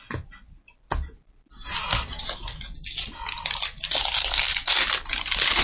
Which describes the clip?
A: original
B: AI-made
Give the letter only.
A